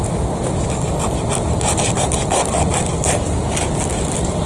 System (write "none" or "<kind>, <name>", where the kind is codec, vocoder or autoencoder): none